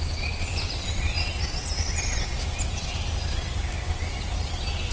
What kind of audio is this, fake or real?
real